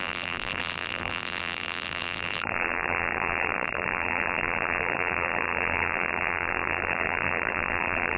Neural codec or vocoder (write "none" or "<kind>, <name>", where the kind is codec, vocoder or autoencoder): vocoder, BigVGAN v2